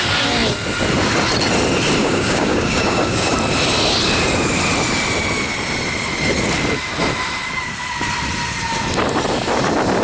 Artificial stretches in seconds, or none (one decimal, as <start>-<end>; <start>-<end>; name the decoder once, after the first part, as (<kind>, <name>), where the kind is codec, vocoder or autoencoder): 2.0-3.3 (codec, DAC)